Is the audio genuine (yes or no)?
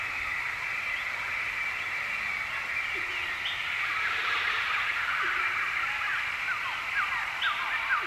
yes